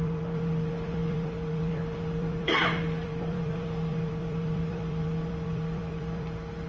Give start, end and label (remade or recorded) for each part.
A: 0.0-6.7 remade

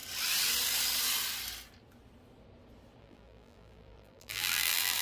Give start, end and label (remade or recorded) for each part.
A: 0.0-3.0 recorded; 3.0-5.0 remade

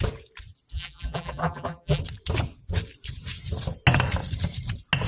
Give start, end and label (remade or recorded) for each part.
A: 0.0-0.7 recorded; 0.7-2.0 remade; 2.0-5.1 recorded